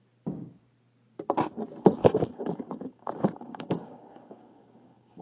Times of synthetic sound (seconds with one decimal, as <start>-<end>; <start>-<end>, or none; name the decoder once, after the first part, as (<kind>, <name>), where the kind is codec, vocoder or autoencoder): 2.0-5.2 (codec, DAC)